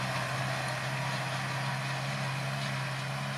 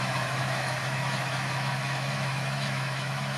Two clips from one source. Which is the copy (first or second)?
second